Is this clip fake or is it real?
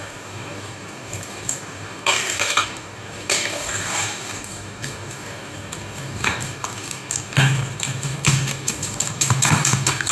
fake